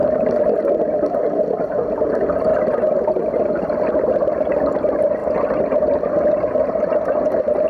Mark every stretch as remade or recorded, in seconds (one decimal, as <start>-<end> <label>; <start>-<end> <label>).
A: 0.0-5.2 recorded; 5.2-6.9 remade; 6.9-7.7 recorded

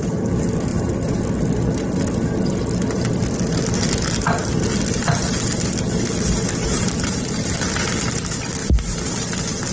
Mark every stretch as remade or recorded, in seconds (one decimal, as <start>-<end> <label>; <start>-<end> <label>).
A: 0.0-6.6 recorded; 6.6-7.2 remade; 7.2-8.6 recorded; 8.6-9.1 remade; 9.1-9.7 recorded

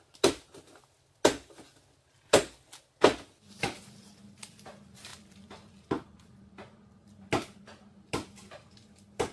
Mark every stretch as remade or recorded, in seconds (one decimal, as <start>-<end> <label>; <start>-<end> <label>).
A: 0.0-9.3 recorded

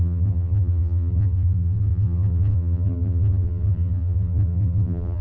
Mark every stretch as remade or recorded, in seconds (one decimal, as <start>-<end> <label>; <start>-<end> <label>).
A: 0.0-5.2 remade

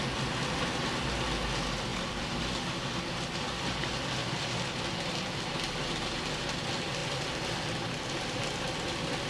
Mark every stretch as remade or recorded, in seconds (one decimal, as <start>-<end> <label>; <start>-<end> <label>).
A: 0.0-1.9 recorded; 1.9-2.5 remade; 2.5-4.2 recorded; 4.2-6.6 remade; 6.6-9.3 recorded

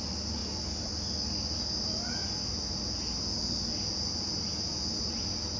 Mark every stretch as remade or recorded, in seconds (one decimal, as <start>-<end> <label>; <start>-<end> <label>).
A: 0.0-0.4 recorded; 0.4-0.9 remade; 0.9-5.6 recorded